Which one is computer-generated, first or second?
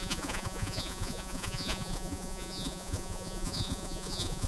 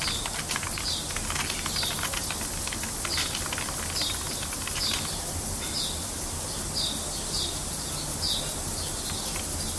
first